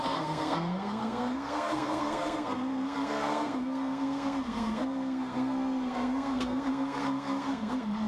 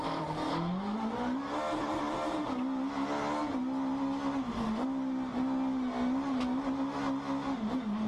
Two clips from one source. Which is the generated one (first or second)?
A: first